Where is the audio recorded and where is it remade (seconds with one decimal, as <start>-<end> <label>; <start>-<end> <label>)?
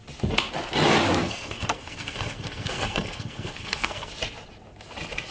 0.0-1.2 recorded; 1.2-4.1 remade; 4.1-5.3 recorded